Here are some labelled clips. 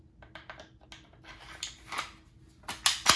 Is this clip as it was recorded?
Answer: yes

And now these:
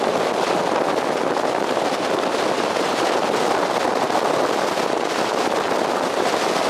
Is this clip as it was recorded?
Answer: yes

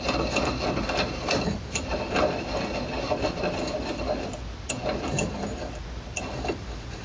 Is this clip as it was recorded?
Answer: yes